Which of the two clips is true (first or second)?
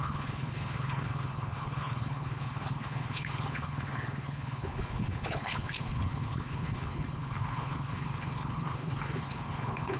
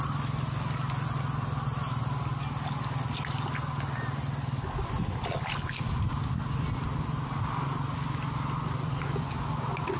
second